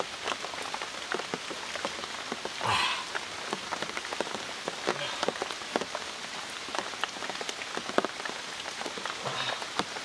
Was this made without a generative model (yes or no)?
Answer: yes